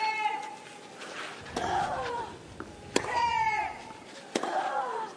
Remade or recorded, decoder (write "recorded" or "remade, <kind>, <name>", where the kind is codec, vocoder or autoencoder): recorded